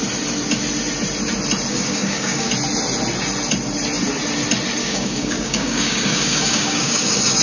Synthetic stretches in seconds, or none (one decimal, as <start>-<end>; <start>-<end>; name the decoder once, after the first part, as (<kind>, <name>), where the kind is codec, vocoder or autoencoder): 1.7-2.5 (codec, DAC); 4.8-7.4